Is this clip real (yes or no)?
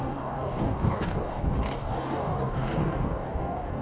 no